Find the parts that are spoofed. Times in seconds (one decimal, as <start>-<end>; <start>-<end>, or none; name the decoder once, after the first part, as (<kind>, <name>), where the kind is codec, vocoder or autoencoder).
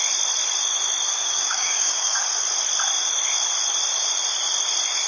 1.1-2.2 (codec, DAC)